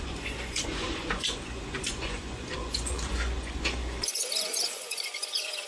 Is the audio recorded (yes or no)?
no